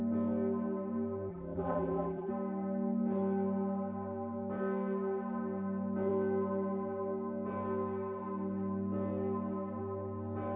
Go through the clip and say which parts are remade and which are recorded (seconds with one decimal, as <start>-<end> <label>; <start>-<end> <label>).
0.0-1.3 recorded; 1.3-2.3 remade; 2.3-10.6 recorded

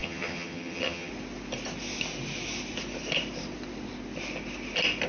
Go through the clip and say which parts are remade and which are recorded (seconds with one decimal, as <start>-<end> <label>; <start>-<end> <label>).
0.0-1.1 remade; 1.1-5.1 recorded

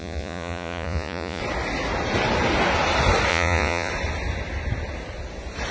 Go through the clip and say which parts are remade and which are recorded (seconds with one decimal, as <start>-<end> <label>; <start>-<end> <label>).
0.0-1.4 remade; 1.4-3.3 recorded; 3.3-3.9 remade; 3.9-5.7 recorded